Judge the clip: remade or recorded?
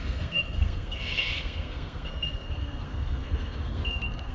remade